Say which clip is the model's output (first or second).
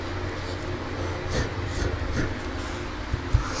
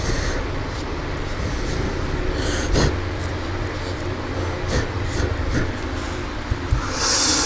second